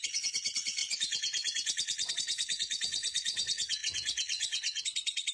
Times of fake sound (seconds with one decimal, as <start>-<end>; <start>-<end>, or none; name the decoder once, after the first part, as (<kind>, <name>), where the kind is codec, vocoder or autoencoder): 0.0-5.3 (vocoder, Vocos)